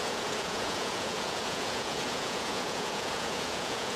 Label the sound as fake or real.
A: fake